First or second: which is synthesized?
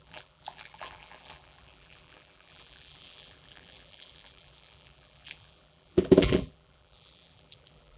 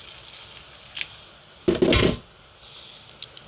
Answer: first